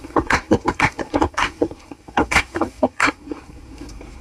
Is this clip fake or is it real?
fake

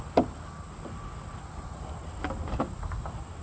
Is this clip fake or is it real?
real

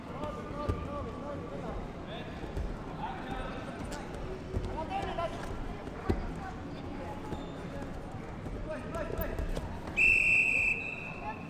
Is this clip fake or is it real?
real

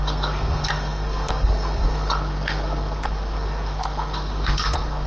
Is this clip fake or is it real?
fake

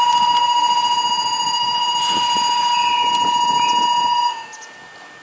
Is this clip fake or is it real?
real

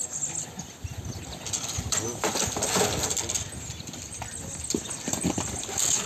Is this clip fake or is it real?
real